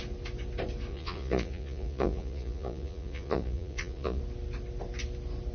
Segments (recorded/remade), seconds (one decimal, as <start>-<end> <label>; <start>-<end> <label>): 0.0-0.9 recorded; 0.9-4.2 remade; 4.2-5.5 recorded